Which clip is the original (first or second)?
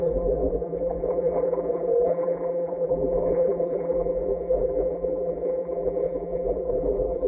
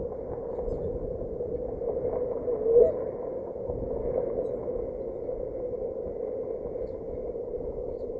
second